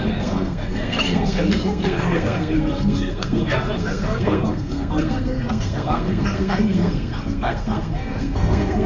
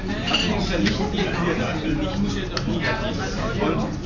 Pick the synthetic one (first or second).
first